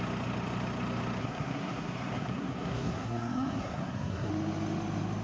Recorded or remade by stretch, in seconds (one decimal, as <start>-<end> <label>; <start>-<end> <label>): 0.0-1.2 recorded; 1.2-4.3 remade; 4.3-5.2 recorded